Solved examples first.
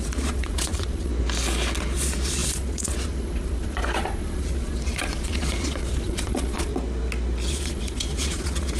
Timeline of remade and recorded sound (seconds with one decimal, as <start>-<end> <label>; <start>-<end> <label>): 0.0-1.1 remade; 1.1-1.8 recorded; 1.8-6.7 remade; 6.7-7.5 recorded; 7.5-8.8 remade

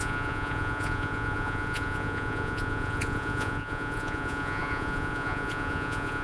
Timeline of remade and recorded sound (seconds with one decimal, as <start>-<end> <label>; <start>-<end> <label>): 0.0-6.2 remade

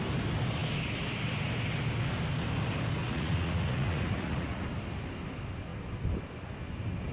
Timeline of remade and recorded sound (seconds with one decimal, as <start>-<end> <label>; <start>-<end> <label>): 0.0-3.0 recorded; 3.0-4.6 remade; 4.6-7.1 recorded

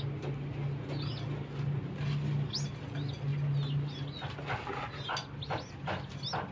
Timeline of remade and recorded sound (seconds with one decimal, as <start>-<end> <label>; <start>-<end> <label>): 0.0-6.5 recorded

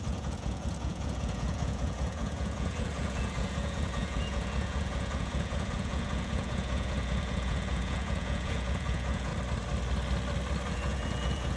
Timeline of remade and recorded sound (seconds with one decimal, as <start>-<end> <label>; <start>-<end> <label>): 0.0-9.3 remade; 9.3-10.7 recorded; 10.7-11.6 remade

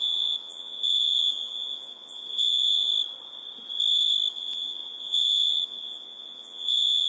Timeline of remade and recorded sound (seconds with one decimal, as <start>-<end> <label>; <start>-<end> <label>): 0.0-2.9 remade; 2.9-4.3 recorded; 4.3-7.1 remade